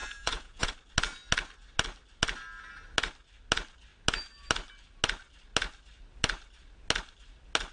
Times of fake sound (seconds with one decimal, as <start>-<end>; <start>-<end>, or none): 0.0-0.7